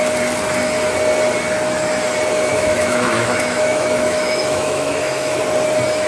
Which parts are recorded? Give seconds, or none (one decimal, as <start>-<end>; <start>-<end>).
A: 0.0-2.5; 5.4-6.1